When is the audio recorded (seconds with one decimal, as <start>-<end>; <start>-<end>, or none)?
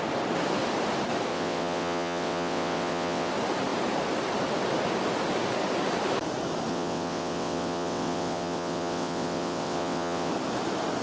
0.0-1.3; 3.3-6.7; 10.3-11.0